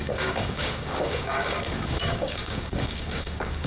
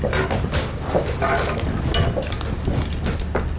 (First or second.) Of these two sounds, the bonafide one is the second